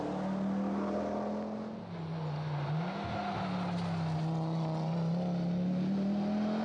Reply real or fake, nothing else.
real